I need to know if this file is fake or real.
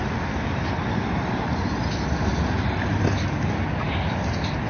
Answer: real